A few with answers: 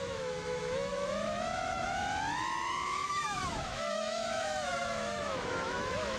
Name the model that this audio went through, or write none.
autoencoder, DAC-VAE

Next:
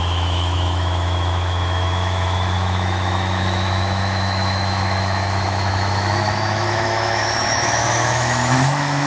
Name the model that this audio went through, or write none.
autoencoder, DAC-VAE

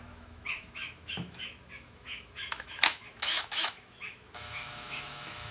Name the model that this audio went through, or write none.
autoencoder, DAC-VAE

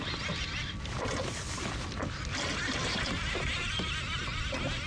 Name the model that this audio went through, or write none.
none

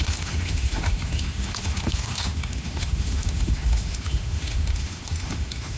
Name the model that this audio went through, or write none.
autoencoder, DAC-VAE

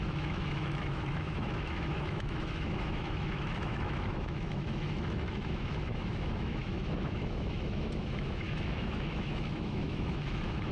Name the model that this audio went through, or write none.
autoencoder, DAC-VAE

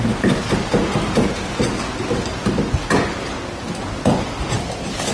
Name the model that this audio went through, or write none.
none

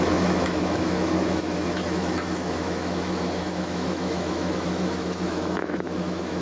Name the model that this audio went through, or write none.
autoencoder, DAC-VAE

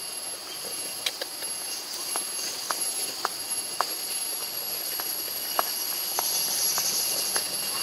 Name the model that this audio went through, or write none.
none